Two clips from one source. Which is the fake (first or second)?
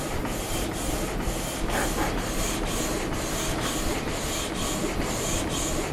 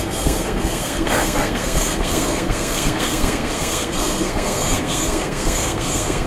second